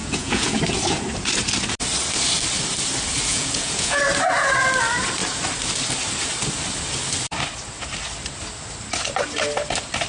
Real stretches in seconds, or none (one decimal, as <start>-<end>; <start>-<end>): 0.6-3.3; 4.0-10.1